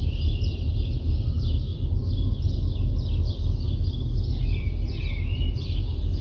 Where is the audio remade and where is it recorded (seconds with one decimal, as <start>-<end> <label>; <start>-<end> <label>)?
0.0-6.2 recorded